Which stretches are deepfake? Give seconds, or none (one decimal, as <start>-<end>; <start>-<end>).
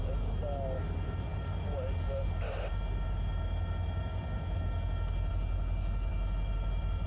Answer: none